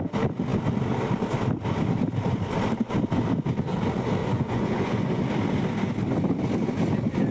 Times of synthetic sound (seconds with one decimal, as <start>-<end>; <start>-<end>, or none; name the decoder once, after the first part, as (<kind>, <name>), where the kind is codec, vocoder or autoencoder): 4.2-5.2 (vocoder, Vocos)